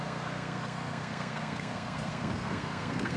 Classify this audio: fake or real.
fake